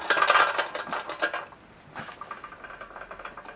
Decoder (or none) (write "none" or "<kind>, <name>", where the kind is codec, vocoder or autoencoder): none